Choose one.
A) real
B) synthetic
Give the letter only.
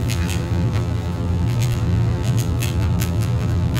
B